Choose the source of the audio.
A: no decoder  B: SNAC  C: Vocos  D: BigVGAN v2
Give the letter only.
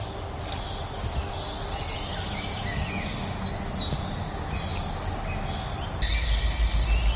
A